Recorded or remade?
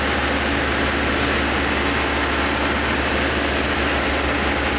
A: recorded